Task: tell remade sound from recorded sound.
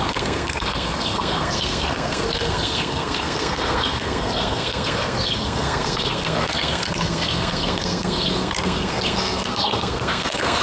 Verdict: remade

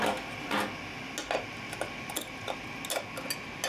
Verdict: recorded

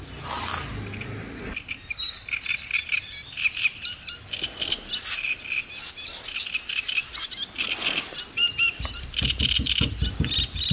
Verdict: recorded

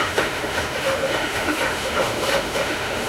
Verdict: remade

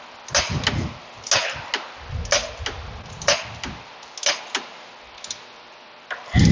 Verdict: recorded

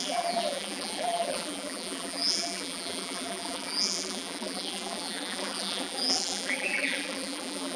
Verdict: remade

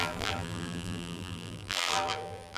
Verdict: remade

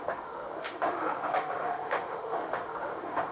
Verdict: remade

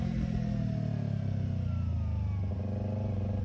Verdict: recorded